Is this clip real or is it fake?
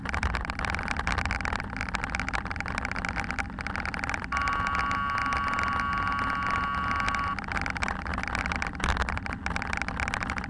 real